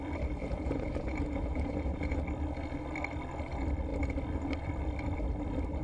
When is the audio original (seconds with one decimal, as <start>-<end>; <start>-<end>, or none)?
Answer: 0.0-0.4; 2.2-5.8